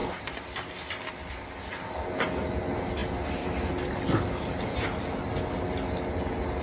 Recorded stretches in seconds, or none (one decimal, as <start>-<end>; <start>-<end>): 0.0-6.6